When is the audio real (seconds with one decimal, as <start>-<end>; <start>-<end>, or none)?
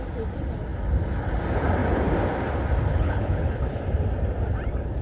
0.0-2.9; 3.8-5.0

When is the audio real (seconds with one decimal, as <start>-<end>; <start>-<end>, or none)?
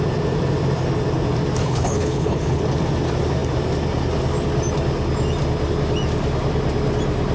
0.0-1.6; 2.6-7.3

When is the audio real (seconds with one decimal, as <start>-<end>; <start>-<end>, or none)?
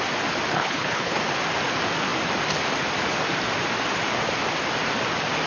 0.0-0.5; 1.2-5.5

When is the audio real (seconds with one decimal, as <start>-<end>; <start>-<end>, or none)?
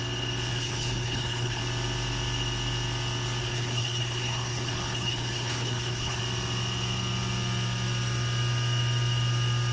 0.0-0.5; 1.6-3.4; 6.2-9.7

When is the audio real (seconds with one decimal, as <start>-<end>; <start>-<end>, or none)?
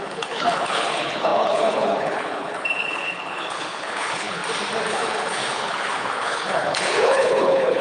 4.4-4.9